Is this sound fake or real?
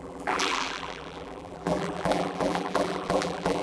fake